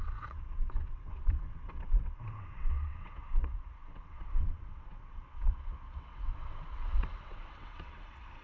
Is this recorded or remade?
remade